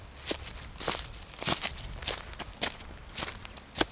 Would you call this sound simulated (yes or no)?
no